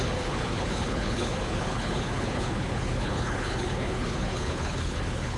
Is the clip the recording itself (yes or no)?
no